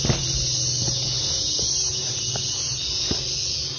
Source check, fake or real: real